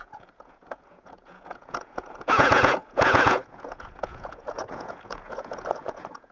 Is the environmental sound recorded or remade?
remade